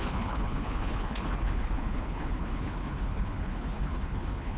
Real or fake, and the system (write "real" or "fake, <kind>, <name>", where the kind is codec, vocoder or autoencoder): fake, codec, HILCodec